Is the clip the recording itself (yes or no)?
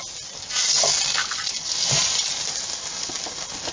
yes